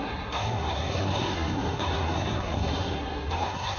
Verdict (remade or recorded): remade